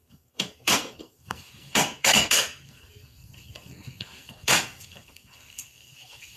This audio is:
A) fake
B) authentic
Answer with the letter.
A